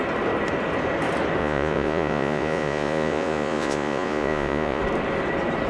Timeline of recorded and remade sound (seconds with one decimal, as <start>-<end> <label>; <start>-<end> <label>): 0.0-1.4 recorded; 1.4-4.8 remade; 4.8-5.7 recorded